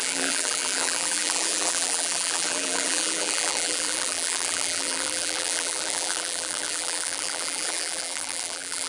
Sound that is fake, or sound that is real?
fake